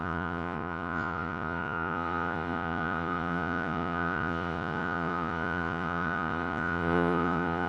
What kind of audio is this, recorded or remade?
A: remade